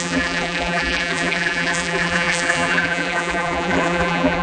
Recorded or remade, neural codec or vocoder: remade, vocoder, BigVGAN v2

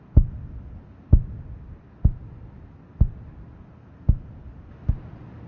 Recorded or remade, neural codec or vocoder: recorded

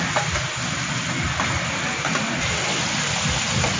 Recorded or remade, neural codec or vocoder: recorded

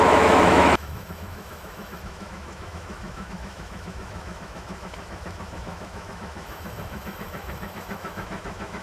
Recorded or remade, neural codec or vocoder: remade, autoencoder, DAC-VAE